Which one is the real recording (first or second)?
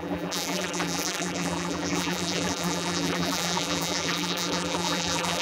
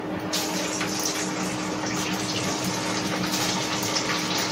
second